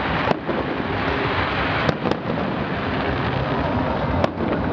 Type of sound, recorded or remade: recorded